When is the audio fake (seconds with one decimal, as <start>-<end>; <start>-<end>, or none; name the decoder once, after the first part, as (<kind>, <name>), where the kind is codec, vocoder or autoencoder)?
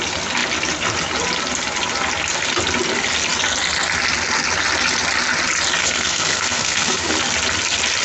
5.8-7.1 (codec, SNAC)